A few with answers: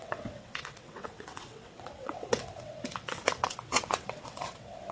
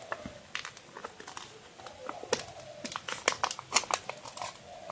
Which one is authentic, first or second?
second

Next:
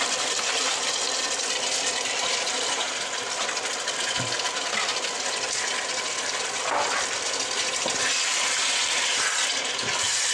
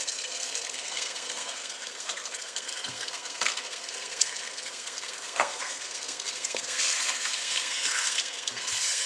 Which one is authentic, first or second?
first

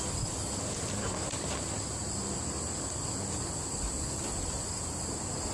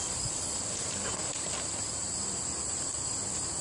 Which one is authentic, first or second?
first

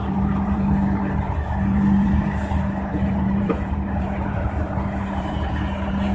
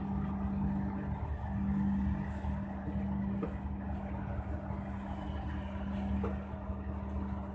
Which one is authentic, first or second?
second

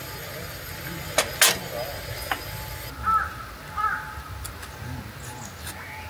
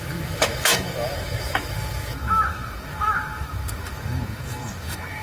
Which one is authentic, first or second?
first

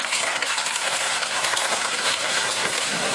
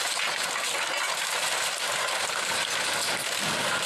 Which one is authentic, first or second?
second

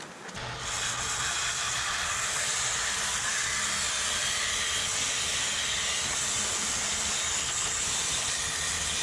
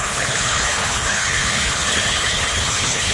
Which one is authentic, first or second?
first